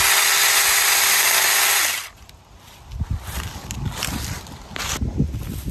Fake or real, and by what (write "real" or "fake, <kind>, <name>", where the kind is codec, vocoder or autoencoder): real